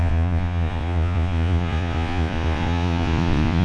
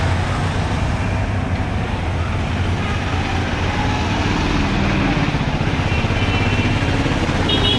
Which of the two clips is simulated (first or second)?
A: first